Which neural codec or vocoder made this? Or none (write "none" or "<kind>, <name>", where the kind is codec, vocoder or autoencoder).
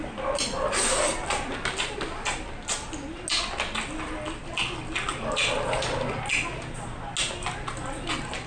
none